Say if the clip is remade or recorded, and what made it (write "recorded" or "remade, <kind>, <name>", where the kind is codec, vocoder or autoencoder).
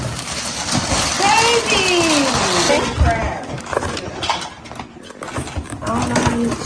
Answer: recorded